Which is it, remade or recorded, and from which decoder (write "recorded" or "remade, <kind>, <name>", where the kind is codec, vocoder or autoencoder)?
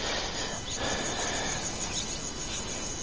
recorded